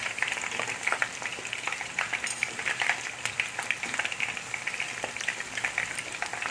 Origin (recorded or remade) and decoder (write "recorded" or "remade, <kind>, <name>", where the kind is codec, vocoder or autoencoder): recorded